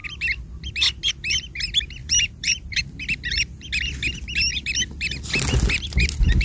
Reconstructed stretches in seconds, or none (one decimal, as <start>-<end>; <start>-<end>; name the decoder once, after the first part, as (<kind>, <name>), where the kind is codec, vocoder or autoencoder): 2.0-2.8 (vocoder, BigVGAN v2)